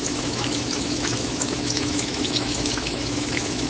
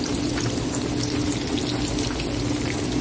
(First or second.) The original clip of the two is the second